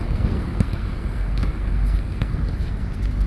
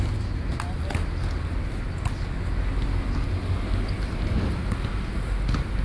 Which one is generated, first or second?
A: first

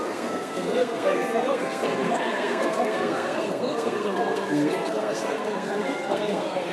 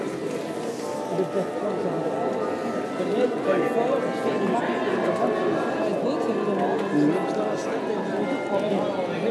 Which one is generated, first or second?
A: first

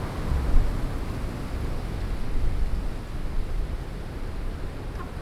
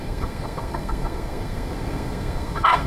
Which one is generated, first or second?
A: second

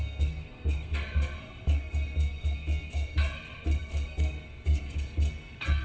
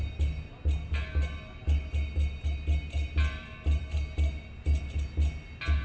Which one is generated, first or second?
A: first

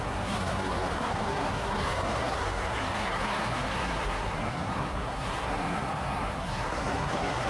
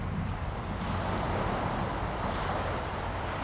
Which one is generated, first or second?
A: first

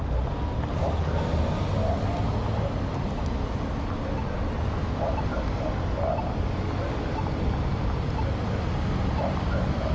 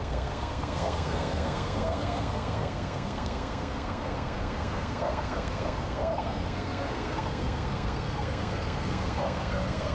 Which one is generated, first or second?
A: second